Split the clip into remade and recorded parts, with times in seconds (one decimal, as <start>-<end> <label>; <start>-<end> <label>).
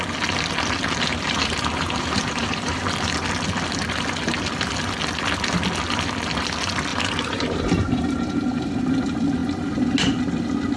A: 0.0-1.1 recorded; 1.1-2.8 remade; 2.8-6.9 recorded; 6.9-8.8 remade; 8.8-10.8 recorded